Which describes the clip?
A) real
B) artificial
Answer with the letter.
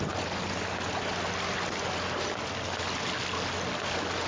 A